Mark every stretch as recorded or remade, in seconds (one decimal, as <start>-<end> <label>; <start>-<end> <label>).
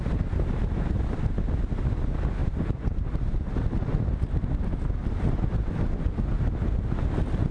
0.0-2.4 recorded; 2.4-4.0 remade; 4.0-5.0 recorded; 5.0-5.8 remade; 5.8-7.5 recorded